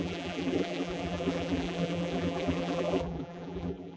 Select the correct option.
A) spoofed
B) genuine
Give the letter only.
A